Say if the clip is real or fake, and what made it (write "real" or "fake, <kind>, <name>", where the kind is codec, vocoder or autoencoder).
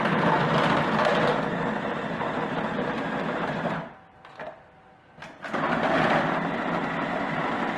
real